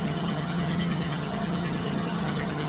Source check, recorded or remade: remade